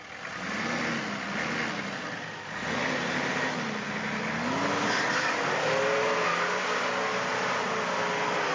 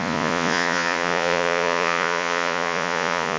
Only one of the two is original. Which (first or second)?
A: first